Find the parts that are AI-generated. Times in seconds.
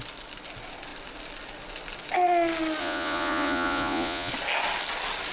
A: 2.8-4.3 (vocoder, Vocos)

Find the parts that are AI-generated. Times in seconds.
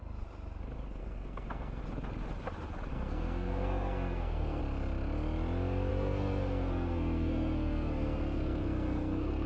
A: 1.0-1.8 (codec, SNAC); 2.9-4.6; 5.9-9.5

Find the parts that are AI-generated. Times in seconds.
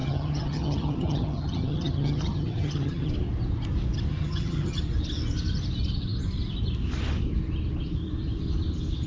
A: 0.0-3.1 (vocoder, HiFi-GAN); 4.1-4.8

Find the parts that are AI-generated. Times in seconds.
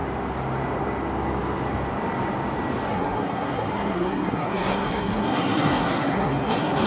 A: 2.9-6.9 (codec, SNAC)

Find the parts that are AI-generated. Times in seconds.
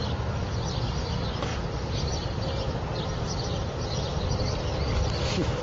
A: none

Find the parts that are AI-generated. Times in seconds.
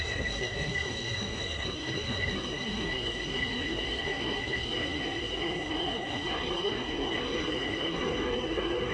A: 0.0-8.9 (codec, SNAC)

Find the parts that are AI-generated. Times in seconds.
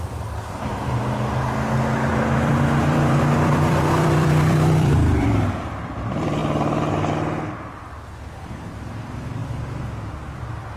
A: 2.1-5.6 (vocoder, BigVGAN v2)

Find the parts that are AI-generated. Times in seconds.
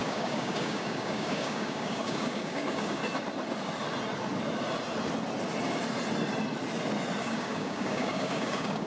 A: 0.0-3.0 (codec, DAC); 7.2-8.9